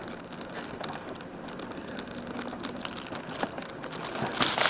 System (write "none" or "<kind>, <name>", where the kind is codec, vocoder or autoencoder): none